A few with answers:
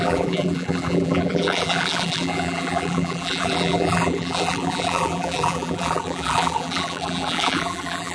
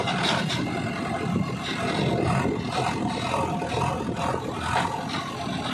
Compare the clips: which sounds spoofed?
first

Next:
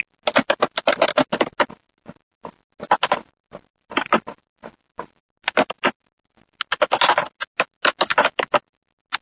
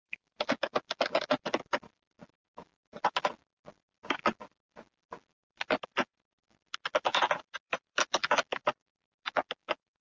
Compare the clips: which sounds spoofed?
second